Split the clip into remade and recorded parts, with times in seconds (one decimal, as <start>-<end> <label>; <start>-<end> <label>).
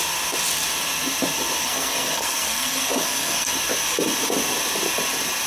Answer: 0.0-1.6 recorded; 1.6-3.5 remade; 3.5-5.5 recorded